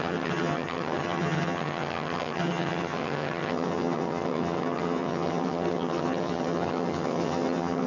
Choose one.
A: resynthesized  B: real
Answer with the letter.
A